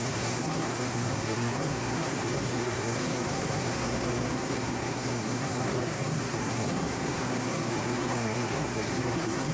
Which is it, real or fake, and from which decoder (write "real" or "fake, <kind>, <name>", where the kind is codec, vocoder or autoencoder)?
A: fake, codec, SNAC